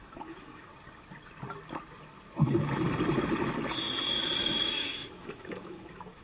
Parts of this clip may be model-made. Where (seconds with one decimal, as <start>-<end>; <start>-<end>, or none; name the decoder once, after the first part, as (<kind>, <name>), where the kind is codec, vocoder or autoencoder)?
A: 0.0-0.7 (autoencoder, DAC-VAE); 4.4-6.2

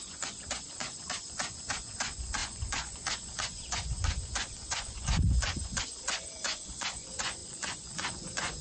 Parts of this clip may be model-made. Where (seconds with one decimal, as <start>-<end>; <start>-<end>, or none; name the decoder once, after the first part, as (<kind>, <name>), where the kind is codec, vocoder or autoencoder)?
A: 0.0-8.6 (vocoder, Vocos)

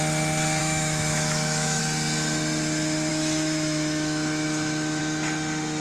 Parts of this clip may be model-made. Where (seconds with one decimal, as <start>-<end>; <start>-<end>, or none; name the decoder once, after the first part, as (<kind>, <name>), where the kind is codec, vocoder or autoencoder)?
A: 0.6-1.8 (autoencoder, DAC-VAE); 3.1-5.0

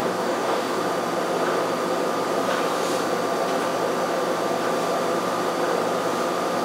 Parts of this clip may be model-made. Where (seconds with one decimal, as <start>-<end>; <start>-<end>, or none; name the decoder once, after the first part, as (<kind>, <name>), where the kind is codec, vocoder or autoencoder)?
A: 0.0-0.8 (codec, DAC)

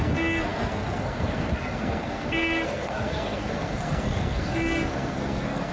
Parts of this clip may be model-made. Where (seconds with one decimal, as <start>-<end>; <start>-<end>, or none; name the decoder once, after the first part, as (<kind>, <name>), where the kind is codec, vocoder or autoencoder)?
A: 0.0-5.7 (codec, SNAC)

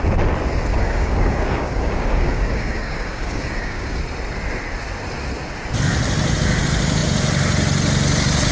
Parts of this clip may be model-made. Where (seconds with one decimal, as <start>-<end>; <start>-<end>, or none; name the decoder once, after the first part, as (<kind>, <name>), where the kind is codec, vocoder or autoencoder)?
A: 0.7-4.0 (codec, DAC)